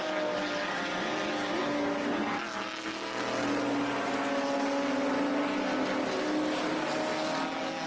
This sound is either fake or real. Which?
real